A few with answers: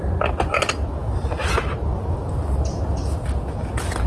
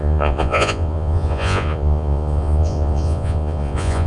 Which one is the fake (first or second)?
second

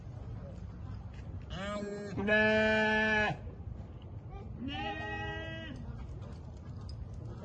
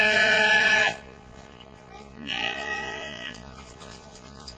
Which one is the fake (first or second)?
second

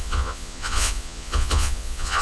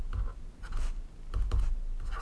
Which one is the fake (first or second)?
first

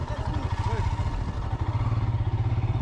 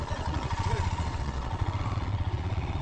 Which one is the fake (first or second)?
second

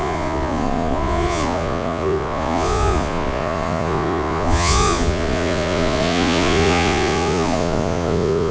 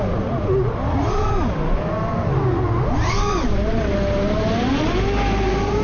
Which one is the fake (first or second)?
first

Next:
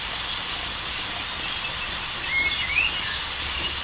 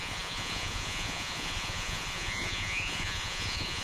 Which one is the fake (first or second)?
second